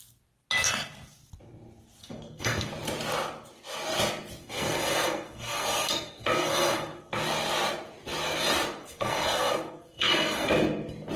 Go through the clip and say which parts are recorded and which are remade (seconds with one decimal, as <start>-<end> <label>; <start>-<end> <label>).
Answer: 0.0-2.0 recorded; 2.0-2.7 remade; 2.7-4.4 recorded; 4.4-7.1 remade; 7.1-8.8 recorded; 8.8-10.5 remade; 10.5-11.2 recorded